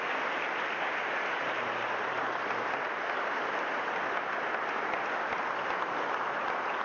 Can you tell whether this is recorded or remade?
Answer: recorded